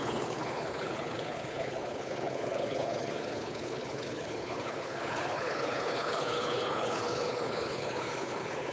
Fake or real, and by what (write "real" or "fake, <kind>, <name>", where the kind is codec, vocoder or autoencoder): fake, codec, HILCodec